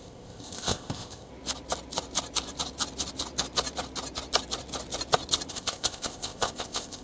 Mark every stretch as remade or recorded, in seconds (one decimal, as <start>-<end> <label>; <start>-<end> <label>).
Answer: 0.0-1.3 remade; 1.3-5.5 recorded; 5.5-7.0 remade